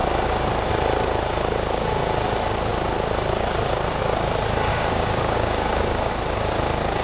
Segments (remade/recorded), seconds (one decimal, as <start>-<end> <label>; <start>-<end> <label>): 0.0-4.7 recorded; 4.7-6.1 remade; 6.1-7.0 recorded